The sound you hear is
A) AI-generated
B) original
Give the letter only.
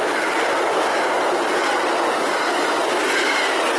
B